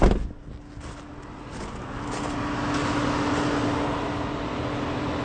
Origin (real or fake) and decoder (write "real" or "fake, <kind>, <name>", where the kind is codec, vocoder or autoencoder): real